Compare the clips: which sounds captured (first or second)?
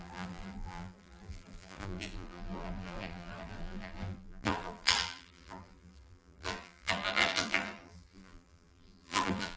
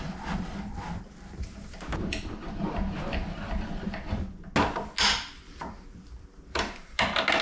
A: second